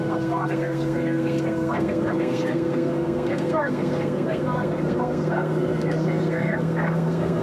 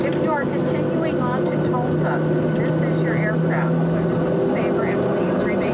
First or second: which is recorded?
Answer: second